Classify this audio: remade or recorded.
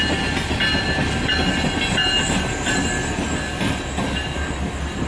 recorded